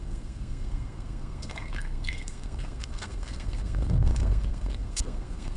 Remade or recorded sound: remade